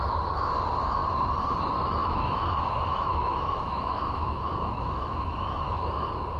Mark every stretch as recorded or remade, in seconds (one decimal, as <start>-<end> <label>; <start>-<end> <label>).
0.0-2.0 recorded; 2.0-5.8 remade; 5.8-6.4 recorded